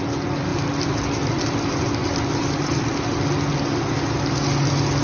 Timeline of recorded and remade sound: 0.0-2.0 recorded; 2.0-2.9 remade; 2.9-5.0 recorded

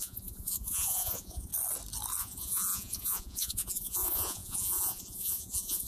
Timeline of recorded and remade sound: 0.0-1.5 remade; 1.5-2.2 recorded; 2.2-5.9 remade